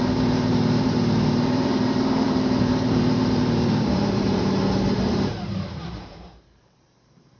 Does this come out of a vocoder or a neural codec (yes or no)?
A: yes